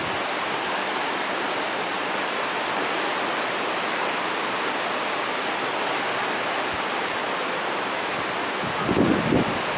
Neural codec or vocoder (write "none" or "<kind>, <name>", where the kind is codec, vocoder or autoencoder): none